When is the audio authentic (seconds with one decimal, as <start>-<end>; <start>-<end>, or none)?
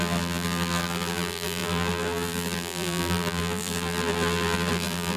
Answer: none